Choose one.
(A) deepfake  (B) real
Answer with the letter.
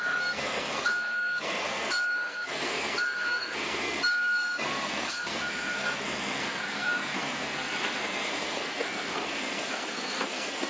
A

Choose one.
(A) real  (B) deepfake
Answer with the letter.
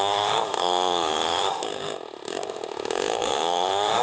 B